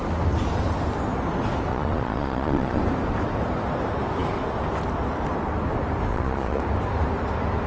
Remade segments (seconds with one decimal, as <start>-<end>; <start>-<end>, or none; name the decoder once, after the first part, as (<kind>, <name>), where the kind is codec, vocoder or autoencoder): 1.7-2.8 (vocoder, Vocos); 6.1-6.6